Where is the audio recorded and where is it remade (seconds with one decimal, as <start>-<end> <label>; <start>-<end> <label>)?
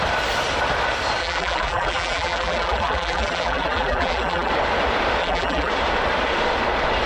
0.0-1.2 recorded; 1.2-4.5 remade; 4.5-5.2 recorded; 5.2-5.7 remade; 5.7-7.1 recorded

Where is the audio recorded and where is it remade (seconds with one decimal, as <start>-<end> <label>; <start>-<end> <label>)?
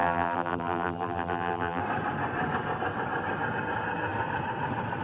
0.0-1.8 remade; 1.8-5.0 recorded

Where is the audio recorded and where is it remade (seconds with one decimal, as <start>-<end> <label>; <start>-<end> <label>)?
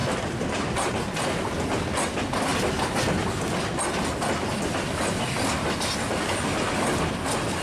0.0-0.9 remade; 0.9-7.6 recorded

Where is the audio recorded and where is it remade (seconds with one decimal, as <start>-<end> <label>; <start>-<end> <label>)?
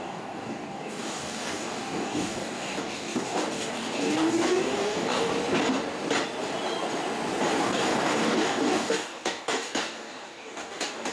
0.0-5.3 remade; 5.3-7.6 recorded; 7.6-11.1 remade